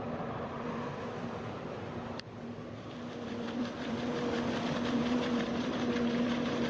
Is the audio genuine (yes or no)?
no